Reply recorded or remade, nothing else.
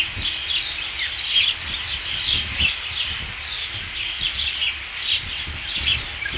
recorded